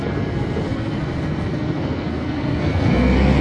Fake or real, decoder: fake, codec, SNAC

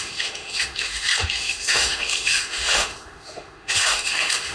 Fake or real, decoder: fake, autoencoder, DAC-VAE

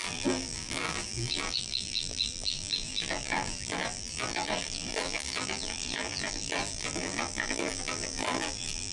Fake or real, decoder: fake, vocoder, BigVGAN v2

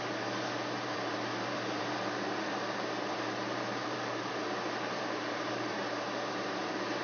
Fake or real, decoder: fake, vocoder, BigVGAN v2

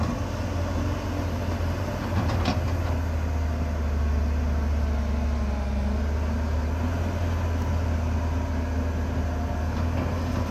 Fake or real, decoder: real